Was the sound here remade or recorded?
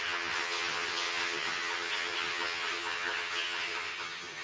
remade